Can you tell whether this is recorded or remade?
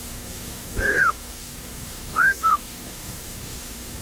remade